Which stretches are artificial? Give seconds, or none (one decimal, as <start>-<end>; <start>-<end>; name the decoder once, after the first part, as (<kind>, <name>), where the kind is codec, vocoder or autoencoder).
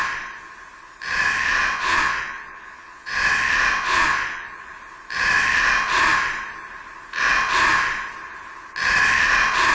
1.6-3.3 (vocoder, Vocos); 3.7-4.7